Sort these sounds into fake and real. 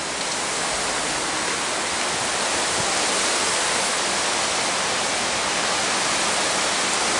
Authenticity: real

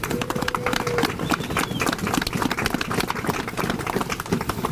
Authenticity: real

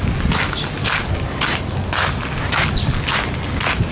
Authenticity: real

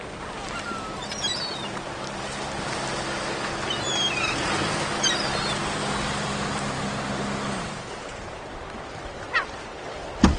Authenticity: real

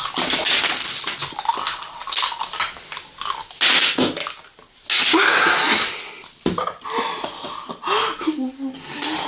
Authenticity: real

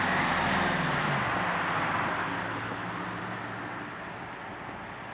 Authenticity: real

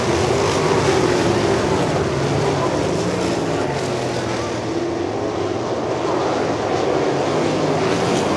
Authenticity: real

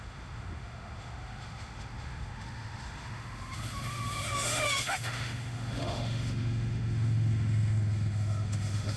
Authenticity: fake